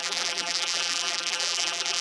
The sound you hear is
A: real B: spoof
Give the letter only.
B